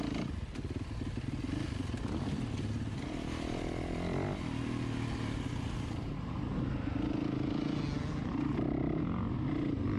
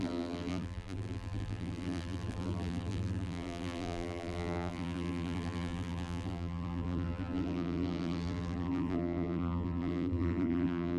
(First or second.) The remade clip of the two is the second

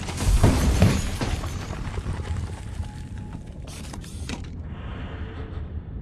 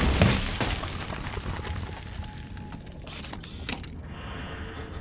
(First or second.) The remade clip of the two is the first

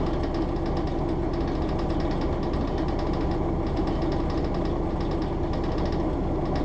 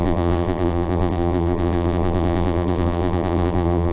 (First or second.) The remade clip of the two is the second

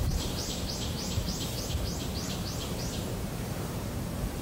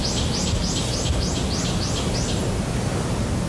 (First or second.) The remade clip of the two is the first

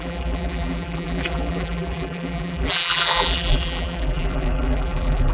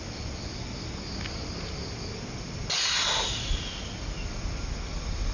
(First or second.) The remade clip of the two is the first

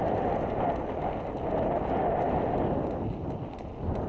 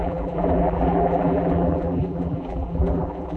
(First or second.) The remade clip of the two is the second